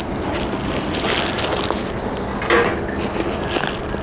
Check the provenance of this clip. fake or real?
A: real